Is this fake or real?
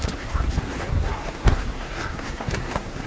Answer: fake